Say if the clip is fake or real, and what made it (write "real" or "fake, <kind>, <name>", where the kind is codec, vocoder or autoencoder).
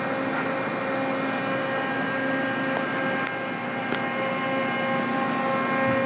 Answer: real